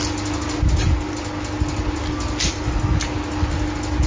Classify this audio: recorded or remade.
recorded